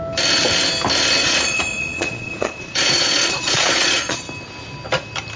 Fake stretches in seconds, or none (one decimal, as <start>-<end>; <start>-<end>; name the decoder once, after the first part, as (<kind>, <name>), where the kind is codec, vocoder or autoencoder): 1.2-4.2 (vocoder, Vocos)